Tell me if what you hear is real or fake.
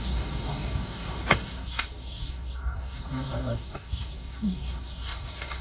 fake